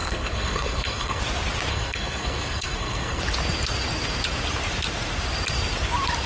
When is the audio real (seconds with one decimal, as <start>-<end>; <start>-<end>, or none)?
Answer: 1.2-1.7; 3.2-6.3